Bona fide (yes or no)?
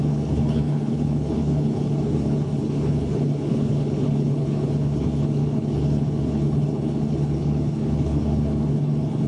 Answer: no